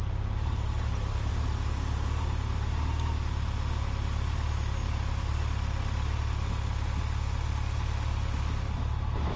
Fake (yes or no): no